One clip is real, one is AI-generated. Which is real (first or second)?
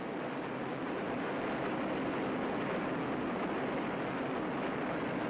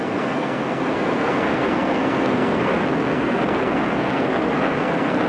first